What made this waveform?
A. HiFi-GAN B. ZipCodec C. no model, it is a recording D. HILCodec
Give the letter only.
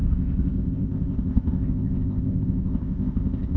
B